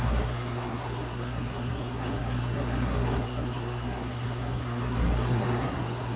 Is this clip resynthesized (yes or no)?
yes